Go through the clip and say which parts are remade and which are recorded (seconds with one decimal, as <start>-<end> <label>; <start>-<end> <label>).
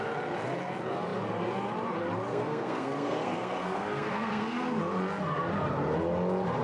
0.0-2.3 recorded; 2.3-4.8 remade; 4.8-6.6 recorded